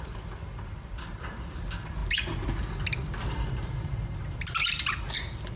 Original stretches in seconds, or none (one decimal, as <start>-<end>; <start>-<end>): 0.0-5.6